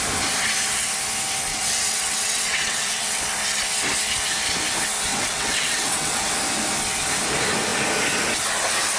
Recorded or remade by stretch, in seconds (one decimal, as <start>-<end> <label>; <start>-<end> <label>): 0.0-1.5 recorded; 1.5-3.2 remade; 3.2-5.1 recorded; 5.1-6.3 remade; 6.3-9.0 recorded